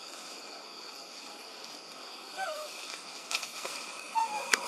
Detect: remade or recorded remade